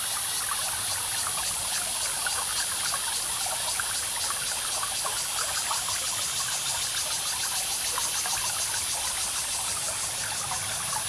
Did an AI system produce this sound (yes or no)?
no